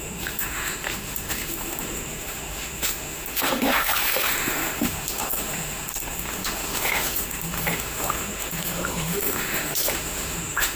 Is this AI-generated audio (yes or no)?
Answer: yes